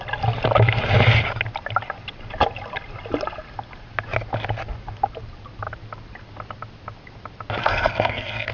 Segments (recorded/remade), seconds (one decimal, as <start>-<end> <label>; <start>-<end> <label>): 0.0-7.6 recorded; 7.6-8.5 remade